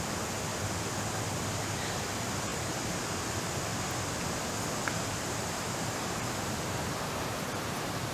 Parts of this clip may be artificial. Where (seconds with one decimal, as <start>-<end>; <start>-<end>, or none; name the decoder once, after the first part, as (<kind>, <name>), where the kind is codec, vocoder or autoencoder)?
0.0-0.5 (vocoder, BigVGAN v2); 1.1-3.7; 4.9-8.1